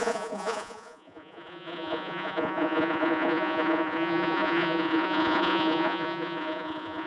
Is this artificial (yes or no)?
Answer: yes